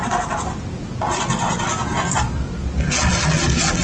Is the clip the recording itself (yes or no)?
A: yes